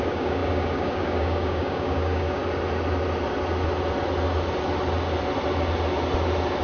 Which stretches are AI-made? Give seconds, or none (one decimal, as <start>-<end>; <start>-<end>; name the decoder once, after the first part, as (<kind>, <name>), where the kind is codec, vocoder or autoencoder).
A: 0.0-2.4 (codec, DAC)